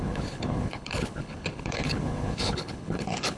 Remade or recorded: remade